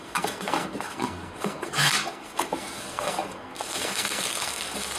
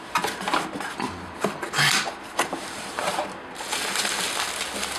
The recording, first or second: second